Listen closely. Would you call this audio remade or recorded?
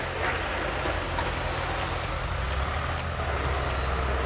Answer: recorded